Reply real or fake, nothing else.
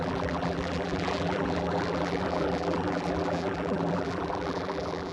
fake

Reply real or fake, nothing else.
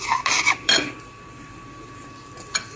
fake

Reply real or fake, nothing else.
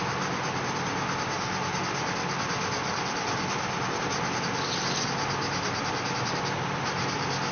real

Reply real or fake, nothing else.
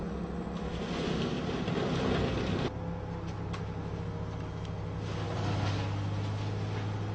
real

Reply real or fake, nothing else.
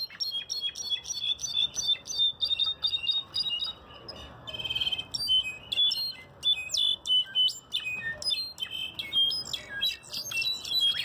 real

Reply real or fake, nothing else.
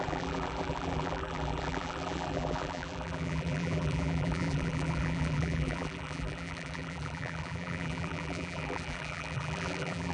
fake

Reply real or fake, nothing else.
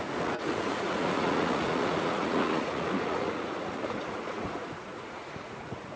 fake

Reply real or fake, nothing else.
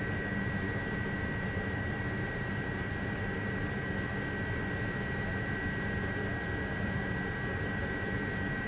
fake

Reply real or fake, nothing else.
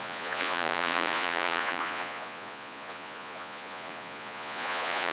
fake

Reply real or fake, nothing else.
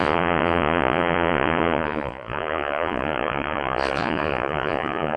fake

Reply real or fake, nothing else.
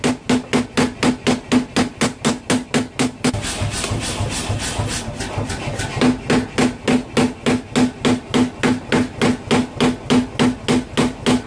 real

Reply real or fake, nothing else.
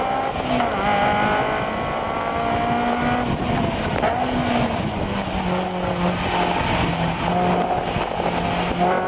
real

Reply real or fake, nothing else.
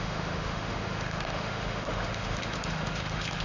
fake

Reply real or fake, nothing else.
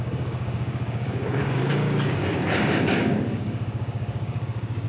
fake